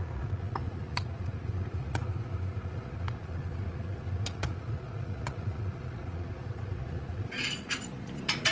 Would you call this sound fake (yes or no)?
yes